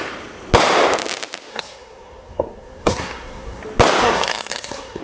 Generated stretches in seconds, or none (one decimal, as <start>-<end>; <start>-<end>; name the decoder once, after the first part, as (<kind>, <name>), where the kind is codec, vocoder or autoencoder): 1.5-3.6 (codec, SNAC); 4.0-5.0